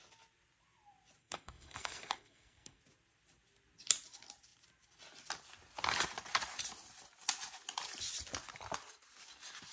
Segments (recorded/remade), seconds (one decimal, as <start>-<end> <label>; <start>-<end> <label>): 0.0-1.2 recorded; 1.2-2.8 remade; 2.8-9.7 recorded